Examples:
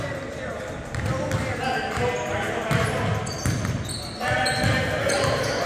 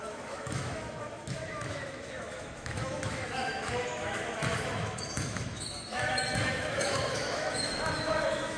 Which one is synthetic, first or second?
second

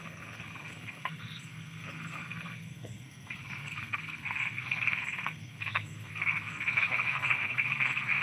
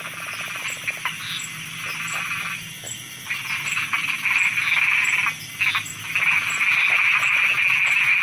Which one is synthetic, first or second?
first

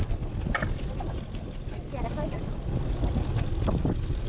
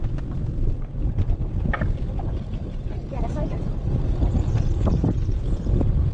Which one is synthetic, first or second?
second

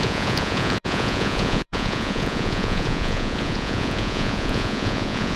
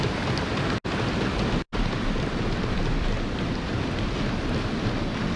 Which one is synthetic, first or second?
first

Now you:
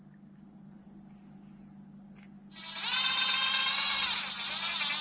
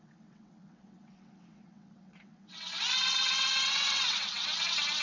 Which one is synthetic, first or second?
second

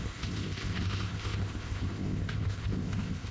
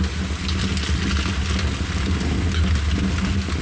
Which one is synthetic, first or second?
first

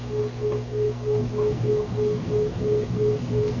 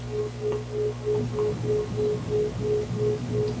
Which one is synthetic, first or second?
first